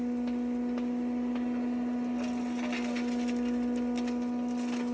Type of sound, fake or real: real